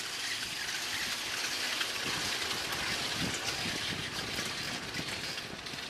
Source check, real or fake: real